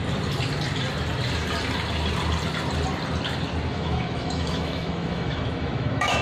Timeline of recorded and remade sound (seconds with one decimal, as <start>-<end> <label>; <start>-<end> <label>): 0.0-3.7 recorded; 3.7-6.2 remade

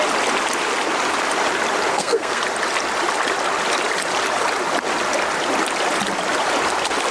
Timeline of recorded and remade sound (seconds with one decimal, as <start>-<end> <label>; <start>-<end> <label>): 0.0-1.9 recorded; 1.9-2.4 remade; 2.4-7.1 recorded

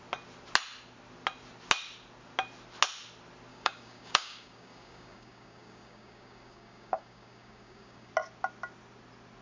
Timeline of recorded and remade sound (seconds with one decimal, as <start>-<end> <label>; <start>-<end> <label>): 0.0-3.5 recorded; 3.5-8.1 remade; 8.1-9.4 recorded

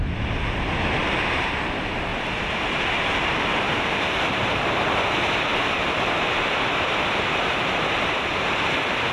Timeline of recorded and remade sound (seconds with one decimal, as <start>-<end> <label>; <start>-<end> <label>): 0.0-1.0 recorded; 1.0-1.5 remade; 1.5-2.1 recorded; 2.1-7.2 remade; 7.2-9.1 recorded

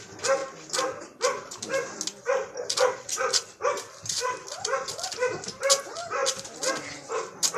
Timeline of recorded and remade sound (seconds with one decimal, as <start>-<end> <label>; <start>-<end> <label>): 0.0-7.6 recorded

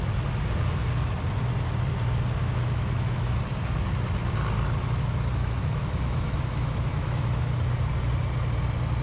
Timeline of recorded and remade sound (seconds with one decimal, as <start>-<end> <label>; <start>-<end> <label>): 0.0-2.4 recorded; 2.4-3.4 remade; 3.4-5.4 recorded; 5.4-7.5 remade; 7.5-9.0 recorded

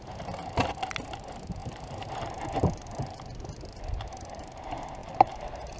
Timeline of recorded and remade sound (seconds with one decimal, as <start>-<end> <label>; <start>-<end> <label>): 0.0-5.8 recorded

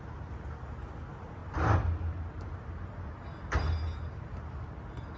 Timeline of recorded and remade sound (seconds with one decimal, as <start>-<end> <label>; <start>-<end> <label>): 0.0-5.2 recorded